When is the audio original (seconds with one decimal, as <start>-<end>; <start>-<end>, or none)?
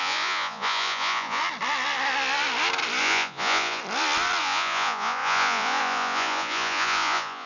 1.4-3.0; 3.8-4.4